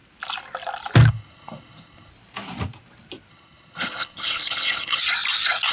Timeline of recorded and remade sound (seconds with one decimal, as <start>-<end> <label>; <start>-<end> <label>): 0.0-1.1 recorded; 1.1-2.1 remade; 2.1-3.3 recorded; 3.3-5.0 remade; 5.0-5.7 recorded

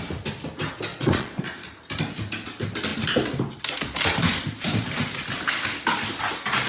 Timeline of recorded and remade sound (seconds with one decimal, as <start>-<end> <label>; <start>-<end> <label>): 0.0-0.9 recorded; 0.9-1.4 remade; 1.4-6.7 recorded

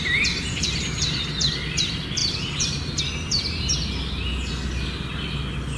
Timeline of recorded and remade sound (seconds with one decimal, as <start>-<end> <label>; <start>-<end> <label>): 0.0-5.8 recorded

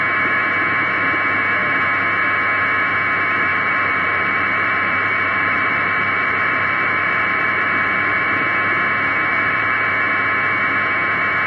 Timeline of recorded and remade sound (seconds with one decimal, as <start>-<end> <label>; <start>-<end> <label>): 0.0-3.5 recorded; 3.5-8.2 remade; 8.2-9.3 recorded; 9.3-9.9 remade; 9.9-11.5 recorded